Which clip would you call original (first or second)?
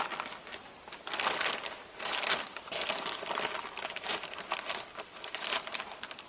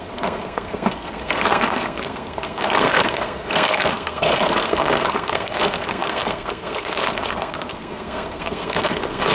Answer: first